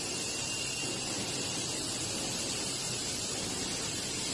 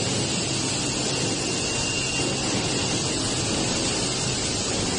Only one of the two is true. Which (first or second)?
second